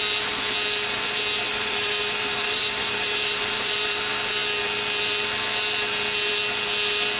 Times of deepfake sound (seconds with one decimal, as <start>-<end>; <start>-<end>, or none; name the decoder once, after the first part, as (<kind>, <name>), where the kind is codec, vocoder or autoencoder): 1.5-4.0 (vocoder, BigVGAN v2)